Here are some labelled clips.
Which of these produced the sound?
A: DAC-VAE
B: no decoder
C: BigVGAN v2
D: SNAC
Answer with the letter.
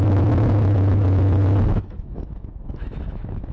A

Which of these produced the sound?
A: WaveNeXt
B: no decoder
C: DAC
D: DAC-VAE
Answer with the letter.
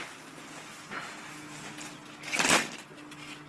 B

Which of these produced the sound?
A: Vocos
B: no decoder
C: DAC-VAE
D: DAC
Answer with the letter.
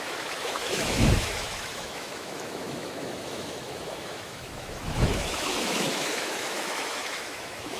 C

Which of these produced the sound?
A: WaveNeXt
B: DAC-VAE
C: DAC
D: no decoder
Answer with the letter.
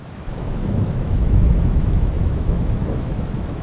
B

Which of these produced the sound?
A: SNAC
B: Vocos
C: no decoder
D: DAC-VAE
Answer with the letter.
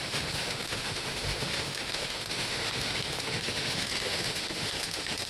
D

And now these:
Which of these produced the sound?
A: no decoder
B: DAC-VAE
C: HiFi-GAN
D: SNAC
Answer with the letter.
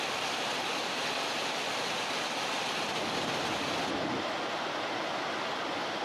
A